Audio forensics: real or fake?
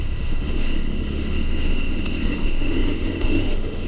fake